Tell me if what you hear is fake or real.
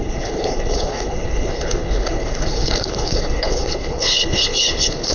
fake